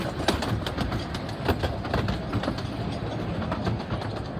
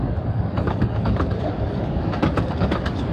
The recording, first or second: first